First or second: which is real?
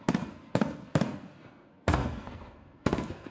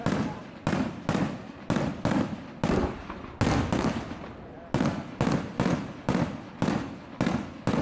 second